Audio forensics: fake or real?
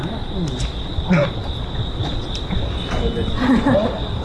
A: real